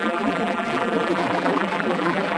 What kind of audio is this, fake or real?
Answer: fake